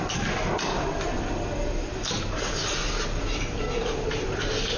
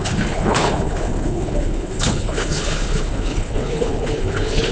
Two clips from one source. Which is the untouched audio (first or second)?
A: first